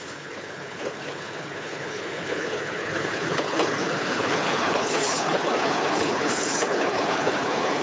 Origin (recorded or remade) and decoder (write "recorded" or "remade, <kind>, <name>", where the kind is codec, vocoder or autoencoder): remade, codec, HILCodec